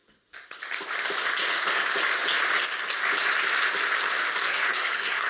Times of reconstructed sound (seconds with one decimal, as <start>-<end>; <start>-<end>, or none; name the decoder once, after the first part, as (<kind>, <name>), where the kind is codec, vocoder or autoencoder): 4.4-5.3 (codec, SNAC)